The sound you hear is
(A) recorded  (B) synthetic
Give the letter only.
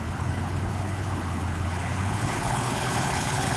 B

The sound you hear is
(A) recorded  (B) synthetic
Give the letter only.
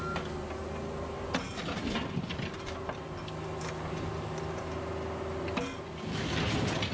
A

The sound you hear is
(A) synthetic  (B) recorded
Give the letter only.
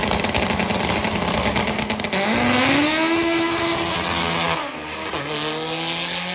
B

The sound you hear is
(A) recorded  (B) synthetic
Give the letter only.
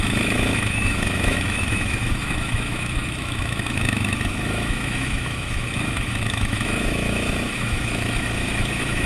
B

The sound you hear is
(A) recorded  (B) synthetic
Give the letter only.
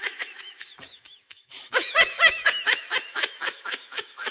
B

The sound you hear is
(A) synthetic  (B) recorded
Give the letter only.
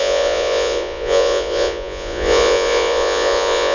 A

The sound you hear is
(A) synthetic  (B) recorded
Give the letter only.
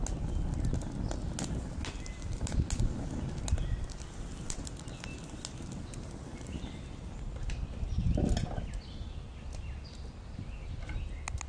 B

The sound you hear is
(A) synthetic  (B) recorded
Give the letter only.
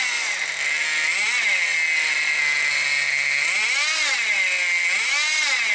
B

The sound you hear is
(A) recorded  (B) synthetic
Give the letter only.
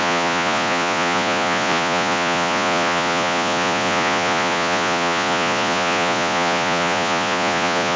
B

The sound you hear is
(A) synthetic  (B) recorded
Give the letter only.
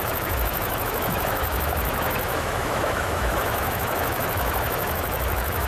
A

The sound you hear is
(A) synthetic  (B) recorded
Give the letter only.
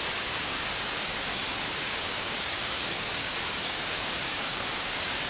A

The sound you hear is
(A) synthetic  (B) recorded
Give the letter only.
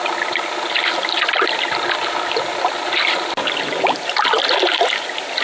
B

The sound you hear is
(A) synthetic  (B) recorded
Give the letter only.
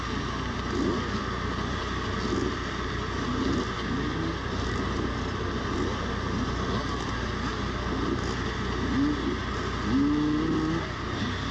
B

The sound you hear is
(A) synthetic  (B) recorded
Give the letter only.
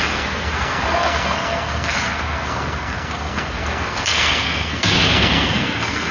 A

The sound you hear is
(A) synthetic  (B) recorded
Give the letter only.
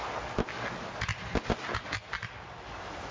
B